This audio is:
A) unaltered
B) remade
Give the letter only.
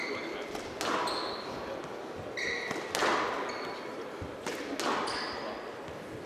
A